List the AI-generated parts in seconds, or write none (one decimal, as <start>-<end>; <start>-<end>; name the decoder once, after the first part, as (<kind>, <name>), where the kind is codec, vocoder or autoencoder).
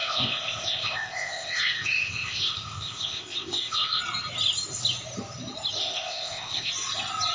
0.0-4.0 (codec, ZipCodec); 5.8-6.7